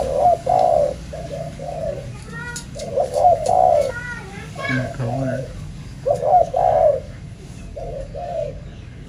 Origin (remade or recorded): remade